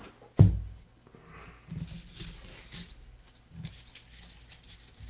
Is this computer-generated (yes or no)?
no